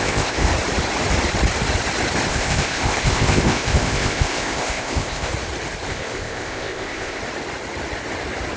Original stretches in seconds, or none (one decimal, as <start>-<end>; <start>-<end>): 0.5-2.3; 5.3-5.9; 7.2-8.6